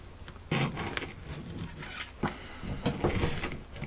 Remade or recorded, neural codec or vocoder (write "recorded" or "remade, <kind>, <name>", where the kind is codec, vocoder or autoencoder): recorded